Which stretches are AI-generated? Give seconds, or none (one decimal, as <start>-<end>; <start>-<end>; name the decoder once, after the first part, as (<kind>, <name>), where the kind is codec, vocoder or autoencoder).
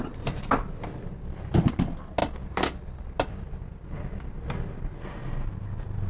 none